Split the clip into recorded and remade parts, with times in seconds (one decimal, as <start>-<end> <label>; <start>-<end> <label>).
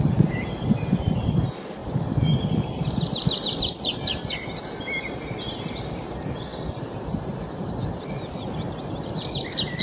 0.0-1.8 remade; 1.8-4.8 recorded; 4.8-9.8 remade